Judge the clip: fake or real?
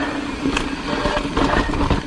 real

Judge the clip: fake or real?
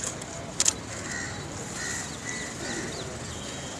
real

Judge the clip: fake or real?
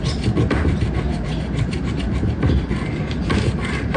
real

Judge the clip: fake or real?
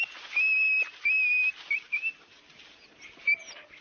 real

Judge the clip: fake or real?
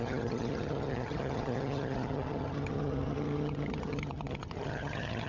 fake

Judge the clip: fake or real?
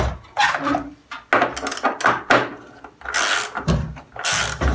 real